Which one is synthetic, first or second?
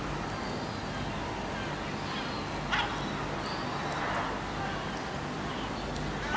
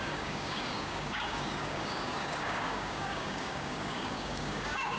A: second